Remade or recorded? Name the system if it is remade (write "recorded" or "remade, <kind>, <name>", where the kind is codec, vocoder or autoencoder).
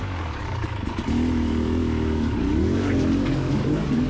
remade, codec, DAC